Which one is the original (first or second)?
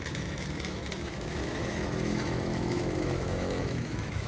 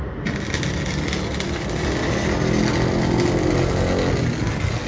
second